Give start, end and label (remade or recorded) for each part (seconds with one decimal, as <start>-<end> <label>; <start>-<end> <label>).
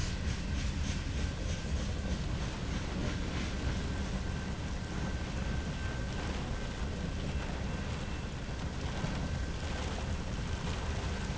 0.0-11.4 recorded